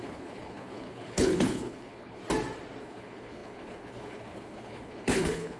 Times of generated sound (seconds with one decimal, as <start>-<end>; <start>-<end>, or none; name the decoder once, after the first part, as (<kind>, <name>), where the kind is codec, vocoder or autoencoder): 0.0-2.2 (codec, HILCodec); 2.8-5.6